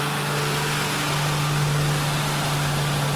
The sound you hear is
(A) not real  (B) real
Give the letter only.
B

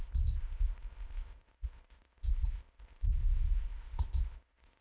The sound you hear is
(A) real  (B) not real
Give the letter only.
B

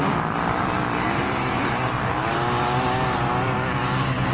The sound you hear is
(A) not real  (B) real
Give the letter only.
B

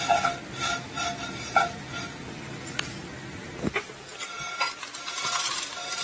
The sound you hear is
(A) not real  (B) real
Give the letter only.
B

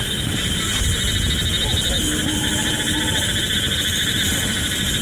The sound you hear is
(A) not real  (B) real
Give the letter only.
B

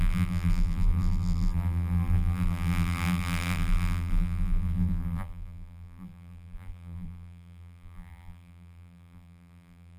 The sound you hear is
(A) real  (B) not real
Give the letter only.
B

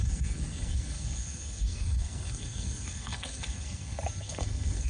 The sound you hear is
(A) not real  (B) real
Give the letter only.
A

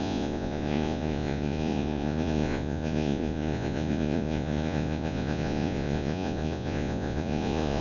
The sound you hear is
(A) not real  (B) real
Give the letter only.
A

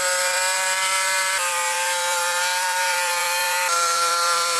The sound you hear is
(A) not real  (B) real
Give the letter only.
A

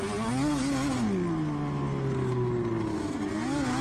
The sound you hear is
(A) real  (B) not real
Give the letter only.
A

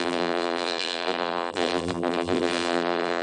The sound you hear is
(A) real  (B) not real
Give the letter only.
B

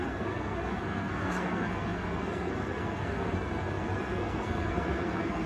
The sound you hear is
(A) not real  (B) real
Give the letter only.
A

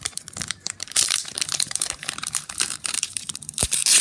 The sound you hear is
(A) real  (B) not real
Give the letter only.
B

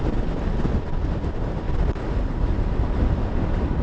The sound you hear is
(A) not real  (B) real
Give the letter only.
B